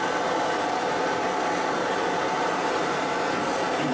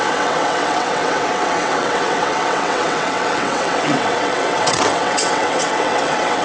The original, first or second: first